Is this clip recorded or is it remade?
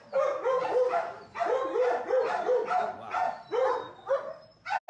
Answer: recorded